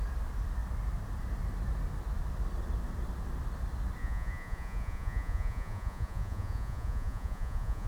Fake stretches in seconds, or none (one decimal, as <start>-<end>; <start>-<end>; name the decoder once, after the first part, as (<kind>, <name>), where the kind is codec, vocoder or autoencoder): 4.0-7.9 (vocoder, Vocos)